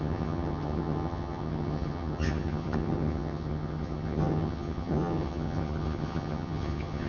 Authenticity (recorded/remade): remade